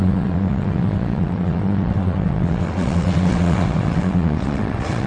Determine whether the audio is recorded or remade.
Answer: remade